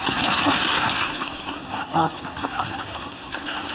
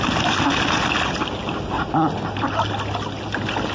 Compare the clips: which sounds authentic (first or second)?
second